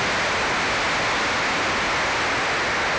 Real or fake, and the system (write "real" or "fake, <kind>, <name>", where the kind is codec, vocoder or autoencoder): real